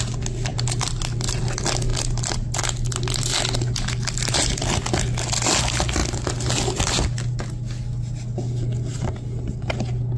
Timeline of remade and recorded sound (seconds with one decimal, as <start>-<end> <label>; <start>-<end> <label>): 0.0-10.2 recorded